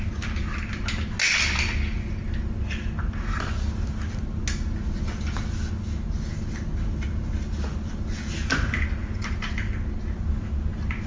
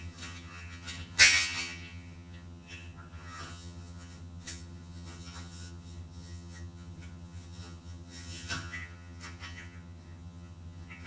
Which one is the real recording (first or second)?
first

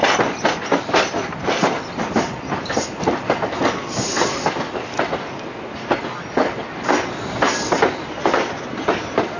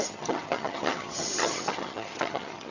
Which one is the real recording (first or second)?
first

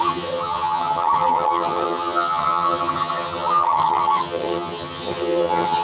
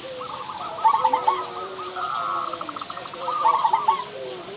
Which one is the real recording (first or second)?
second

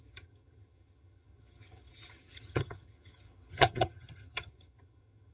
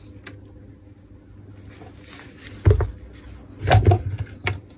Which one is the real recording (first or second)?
second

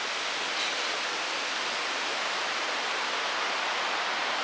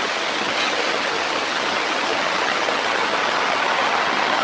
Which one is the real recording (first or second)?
first